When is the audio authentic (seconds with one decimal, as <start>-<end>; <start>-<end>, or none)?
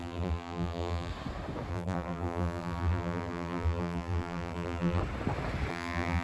1.1-1.7; 5.0-5.7